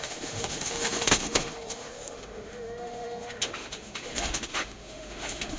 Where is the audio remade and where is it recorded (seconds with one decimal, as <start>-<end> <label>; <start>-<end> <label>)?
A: 0.0-5.6 remade